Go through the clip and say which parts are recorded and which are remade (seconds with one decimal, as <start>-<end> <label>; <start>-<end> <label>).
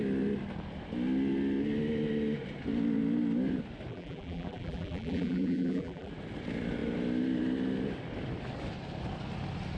0.0-3.9 recorded; 3.9-6.1 remade; 6.1-9.8 recorded